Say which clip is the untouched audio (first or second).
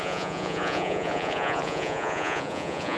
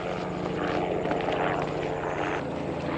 second